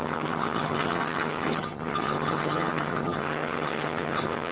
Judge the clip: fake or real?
fake